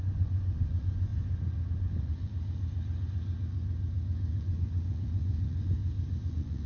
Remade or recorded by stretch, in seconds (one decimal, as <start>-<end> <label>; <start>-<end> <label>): 0.0-1.1 remade; 1.1-1.8 recorded; 1.8-2.3 remade; 2.3-4.3 recorded; 4.3-5.8 remade; 5.8-6.3 recorded; 6.3-6.7 remade